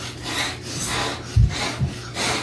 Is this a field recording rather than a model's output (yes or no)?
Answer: yes